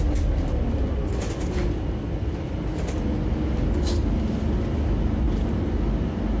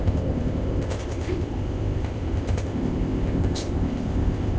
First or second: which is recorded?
first